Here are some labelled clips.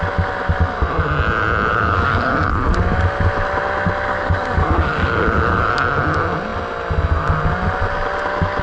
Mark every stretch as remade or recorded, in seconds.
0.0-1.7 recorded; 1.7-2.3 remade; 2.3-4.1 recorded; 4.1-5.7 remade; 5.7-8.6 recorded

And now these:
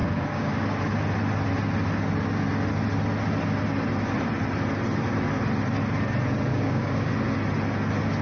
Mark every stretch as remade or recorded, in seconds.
0.0-0.5 remade; 0.5-6.5 recorded; 6.5-7.1 remade; 7.1-8.2 recorded

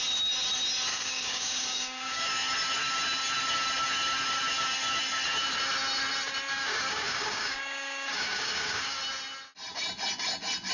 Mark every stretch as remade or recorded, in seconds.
0.0-0.9 recorded; 0.9-2.2 remade; 2.2-6.5 recorded; 6.5-9.0 remade; 9.0-10.7 recorded